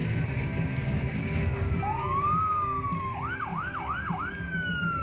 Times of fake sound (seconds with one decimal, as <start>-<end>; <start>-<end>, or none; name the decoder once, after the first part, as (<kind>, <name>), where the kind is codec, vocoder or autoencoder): 0.0-5.0 (codec, DAC)